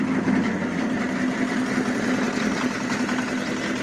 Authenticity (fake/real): real